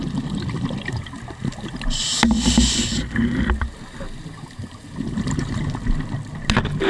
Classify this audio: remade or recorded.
recorded